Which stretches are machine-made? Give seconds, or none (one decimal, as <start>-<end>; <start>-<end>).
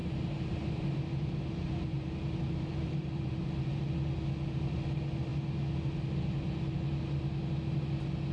0.0-3.4